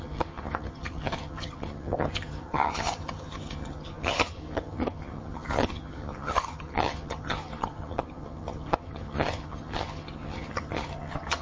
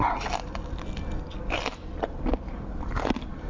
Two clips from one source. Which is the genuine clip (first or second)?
second